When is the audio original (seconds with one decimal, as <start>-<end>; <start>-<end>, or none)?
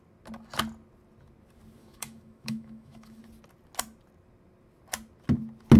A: 0.0-1.8; 3.2-5.8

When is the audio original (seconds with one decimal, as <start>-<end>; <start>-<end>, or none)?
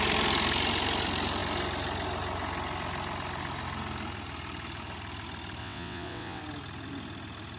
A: 0.0-5.6; 6.4-7.6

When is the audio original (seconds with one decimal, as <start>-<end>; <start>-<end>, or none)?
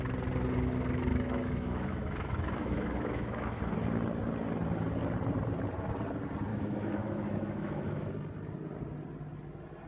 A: 0.0-1.1; 3.6-6.5; 8.1-9.9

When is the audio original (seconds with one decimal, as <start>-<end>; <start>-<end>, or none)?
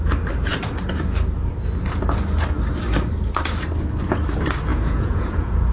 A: 0.0-4.7